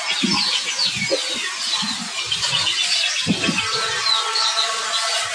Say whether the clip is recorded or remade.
recorded